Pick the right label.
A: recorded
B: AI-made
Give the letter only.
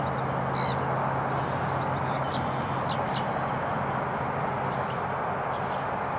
A